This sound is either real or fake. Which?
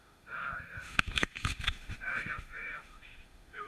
fake